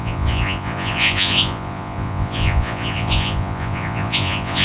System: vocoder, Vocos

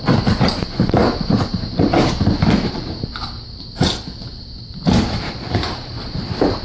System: vocoder, BigVGAN v2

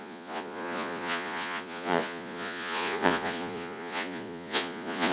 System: vocoder, Vocos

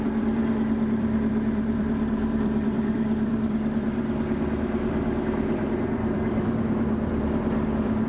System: vocoder, BigVGAN v2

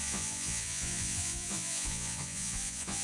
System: vocoder, Vocos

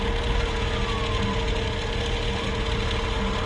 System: none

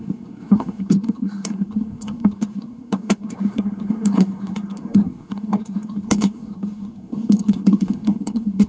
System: codec, SNAC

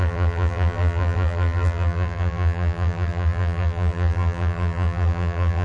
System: vocoder, BigVGAN v2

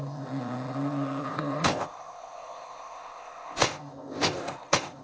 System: codec, ZipCodec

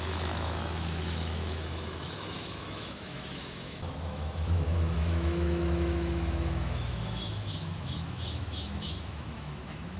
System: autoencoder, DAC-VAE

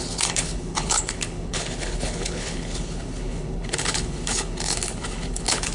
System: codec, HILCodec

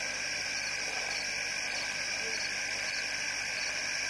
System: none